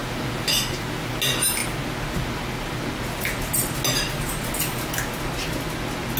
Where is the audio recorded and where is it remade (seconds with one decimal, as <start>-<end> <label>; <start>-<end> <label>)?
0.0-6.2 recorded